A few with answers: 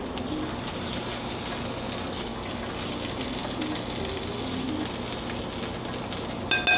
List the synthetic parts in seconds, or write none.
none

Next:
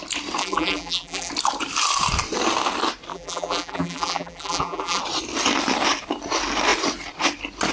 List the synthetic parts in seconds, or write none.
0.4-1.3 (vocoder, BigVGAN v2); 3.1-5.0

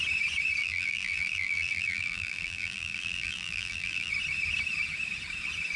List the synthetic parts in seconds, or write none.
0.6-4.1 (vocoder, BigVGAN v2)

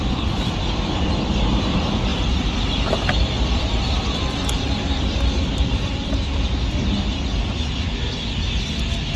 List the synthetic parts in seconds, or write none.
2.1-6.1 (vocoder, BigVGAN v2)

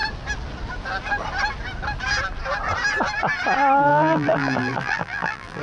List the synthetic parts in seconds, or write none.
3.9-5.6 (vocoder, BigVGAN v2)

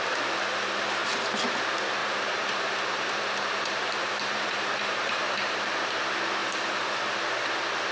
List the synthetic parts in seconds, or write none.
2.0-5.6 (vocoder, BigVGAN v2); 6.4-7.0

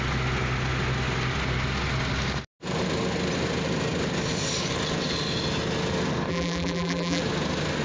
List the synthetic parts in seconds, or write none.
6.3-7.2 (vocoder, BigVGAN v2)